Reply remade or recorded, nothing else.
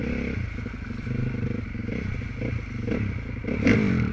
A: recorded